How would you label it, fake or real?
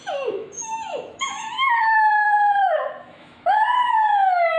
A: fake